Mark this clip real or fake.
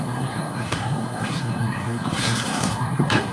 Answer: fake